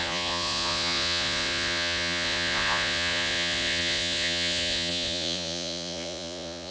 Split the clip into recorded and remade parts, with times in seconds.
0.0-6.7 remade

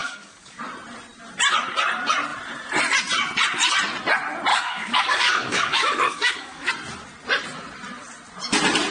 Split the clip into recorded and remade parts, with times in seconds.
0.0-0.6 remade; 0.6-4.5 recorded; 4.5-6.7 remade; 6.7-8.9 recorded

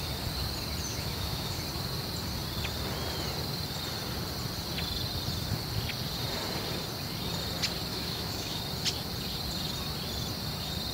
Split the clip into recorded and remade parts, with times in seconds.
0.0-0.9 recorded; 0.9-1.6 remade; 1.6-7.9 recorded; 7.9-8.6 remade; 8.6-10.9 recorded

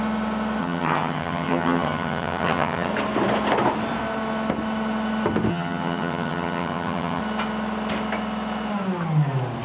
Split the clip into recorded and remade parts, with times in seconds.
0.0-0.6 recorded; 0.6-2.9 remade; 2.9-5.5 recorded; 5.5-7.2 remade; 7.2-9.6 recorded

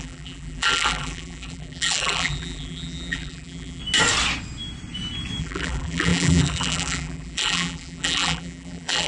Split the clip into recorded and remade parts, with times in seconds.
0.0-3.8 remade; 3.8-5.4 recorded; 5.4-9.1 remade

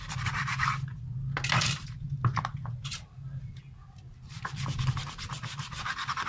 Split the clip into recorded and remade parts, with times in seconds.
0.0-6.3 recorded

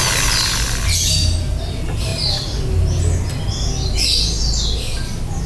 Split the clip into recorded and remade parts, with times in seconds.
0.0-5.5 recorded

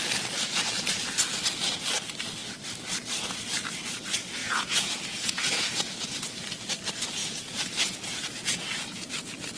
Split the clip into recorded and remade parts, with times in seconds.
0.0-4.4 recorded; 4.4-6.3 remade; 6.3-7.2 recorded; 7.2-9.1 remade; 9.1-9.6 recorded